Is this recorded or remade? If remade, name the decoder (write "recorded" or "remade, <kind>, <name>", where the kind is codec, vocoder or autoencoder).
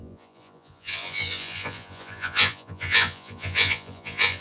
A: remade, vocoder, Vocos